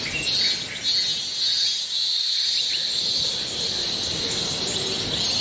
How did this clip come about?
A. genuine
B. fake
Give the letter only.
A